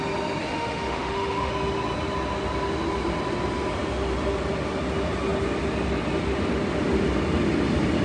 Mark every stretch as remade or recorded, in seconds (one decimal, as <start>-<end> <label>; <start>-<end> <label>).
0.0-0.4 recorded; 0.4-1.5 remade; 1.5-8.0 recorded